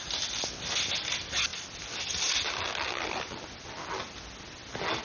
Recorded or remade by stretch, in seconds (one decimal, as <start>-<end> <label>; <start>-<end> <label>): 0.0-5.0 recorded